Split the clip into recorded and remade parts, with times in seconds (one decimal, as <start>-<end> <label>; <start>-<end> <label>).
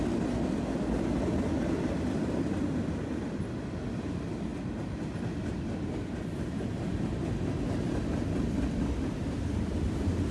0.0-10.3 recorded